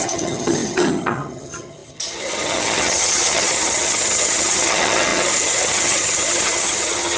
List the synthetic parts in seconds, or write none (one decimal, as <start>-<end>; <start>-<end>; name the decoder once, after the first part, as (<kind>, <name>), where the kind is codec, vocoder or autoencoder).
0.0-7.2 (vocoder, HiFi-GAN)